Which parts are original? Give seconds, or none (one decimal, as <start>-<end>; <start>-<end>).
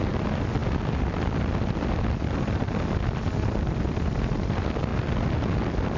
0.0-6.0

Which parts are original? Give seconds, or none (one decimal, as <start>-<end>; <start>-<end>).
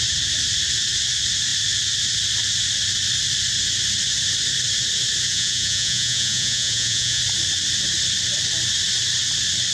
0.0-5.3; 7.2-9.7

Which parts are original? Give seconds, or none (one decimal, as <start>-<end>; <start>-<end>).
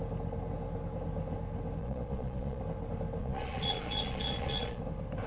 0.0-1.8; 2.6-3.2; 4.8-5.3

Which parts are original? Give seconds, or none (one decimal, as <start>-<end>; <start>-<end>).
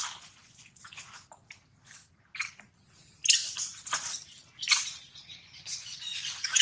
0.0-0.4; 1.3-5.3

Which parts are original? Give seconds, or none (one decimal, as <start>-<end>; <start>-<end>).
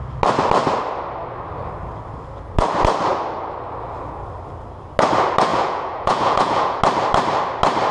0.0-5.5; 6.8-7.9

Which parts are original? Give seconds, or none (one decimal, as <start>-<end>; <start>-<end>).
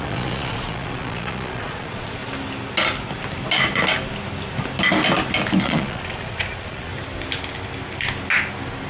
2.2-5.6; 6.9-8.9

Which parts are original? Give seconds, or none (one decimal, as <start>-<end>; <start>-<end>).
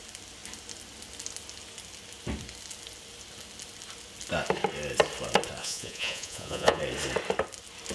0.0-5.6; 6.8-7.9